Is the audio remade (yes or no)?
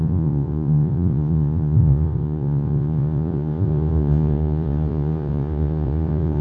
yes